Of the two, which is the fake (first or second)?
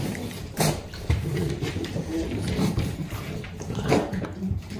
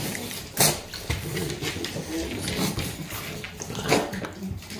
first